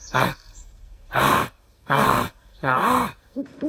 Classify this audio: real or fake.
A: fake